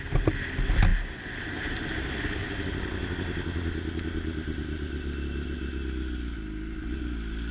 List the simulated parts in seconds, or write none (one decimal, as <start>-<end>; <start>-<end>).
0.9-1.9